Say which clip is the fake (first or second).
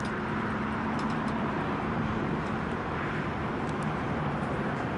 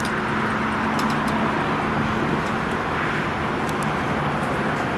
first